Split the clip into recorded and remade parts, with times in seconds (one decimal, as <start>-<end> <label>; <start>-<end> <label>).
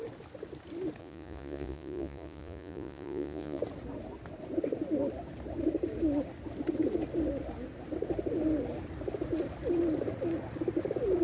0.0-1.0 recorded; 1.0-3.6 remade; 3.6-11.2 recorded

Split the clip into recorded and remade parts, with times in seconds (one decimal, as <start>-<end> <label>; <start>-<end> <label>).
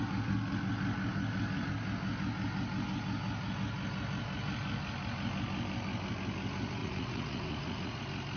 0.0-6.8 recorded; 6.8-8.0 remade; 8.0-8.4 recorded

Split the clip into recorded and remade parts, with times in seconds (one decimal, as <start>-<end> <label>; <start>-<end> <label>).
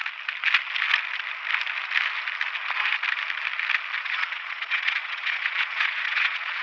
0.0-4.0 recorded; 4.0-6.6 remade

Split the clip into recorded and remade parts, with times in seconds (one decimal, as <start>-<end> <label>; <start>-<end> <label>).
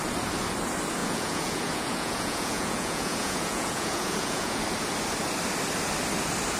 0.0-1.0 recorded; 1.0-4.6 remade; 4.6-6.6 recorded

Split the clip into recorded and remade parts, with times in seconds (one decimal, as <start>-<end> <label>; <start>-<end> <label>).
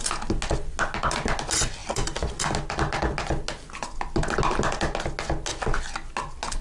0.0-6.6 recorded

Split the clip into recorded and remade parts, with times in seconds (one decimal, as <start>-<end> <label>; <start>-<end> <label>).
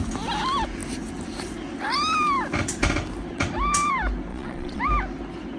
0.0-4.3 recorded; 4.3-4.8 remade; 4.8-5.6 recorded